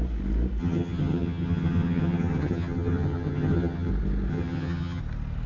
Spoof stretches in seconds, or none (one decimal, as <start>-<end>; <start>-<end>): 0.6-3.9; 4.3-5.0